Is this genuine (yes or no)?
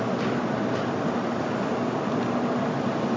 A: yes